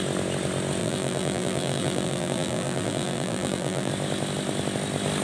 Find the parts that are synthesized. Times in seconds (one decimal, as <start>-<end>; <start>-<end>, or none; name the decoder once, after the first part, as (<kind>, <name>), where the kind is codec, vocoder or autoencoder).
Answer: 0.8-3.9 (vocoder, BigVGAN v2)

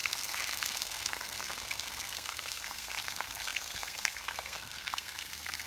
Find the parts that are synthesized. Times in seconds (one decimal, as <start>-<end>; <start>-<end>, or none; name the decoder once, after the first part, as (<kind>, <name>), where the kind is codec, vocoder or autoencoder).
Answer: 0.0-5.7 (codec, SNAC)

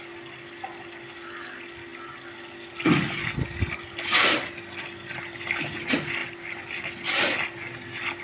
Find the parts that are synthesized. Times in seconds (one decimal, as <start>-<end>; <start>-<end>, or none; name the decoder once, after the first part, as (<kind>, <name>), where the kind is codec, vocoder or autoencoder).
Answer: none

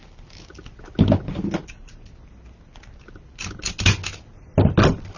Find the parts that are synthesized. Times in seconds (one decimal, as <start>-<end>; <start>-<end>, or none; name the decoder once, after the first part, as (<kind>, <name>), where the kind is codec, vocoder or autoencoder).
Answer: none

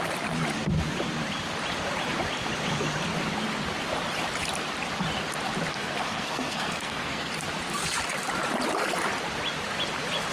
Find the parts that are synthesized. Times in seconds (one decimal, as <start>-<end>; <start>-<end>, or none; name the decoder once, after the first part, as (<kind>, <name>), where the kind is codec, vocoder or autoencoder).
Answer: 5.7-7.3 (codec, SNAC)

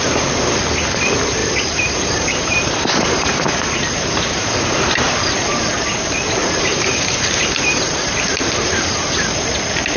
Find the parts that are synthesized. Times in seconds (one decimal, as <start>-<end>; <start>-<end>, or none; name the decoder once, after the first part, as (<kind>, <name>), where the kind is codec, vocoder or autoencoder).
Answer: 1.4-5.1 (vocoder, BigVGAN v2); 6.4-9.4